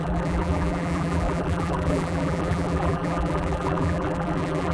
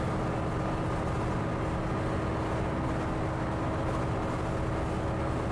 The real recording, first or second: second